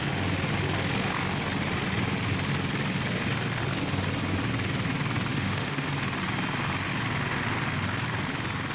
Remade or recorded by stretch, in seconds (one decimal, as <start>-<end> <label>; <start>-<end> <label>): 0.0-5.3 recorded; 5.3-5.9 remade; 5.9-8.7 recorded

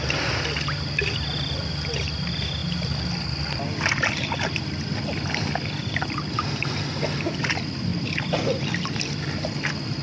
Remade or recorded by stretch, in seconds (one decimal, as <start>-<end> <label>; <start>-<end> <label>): 0.0-10.0 recorded

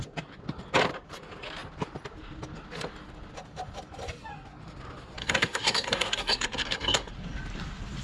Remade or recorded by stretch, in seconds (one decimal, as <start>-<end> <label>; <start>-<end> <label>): 0.0-5.2 recorded; 5.2-7.1 remade; 7.1-8.0 recorded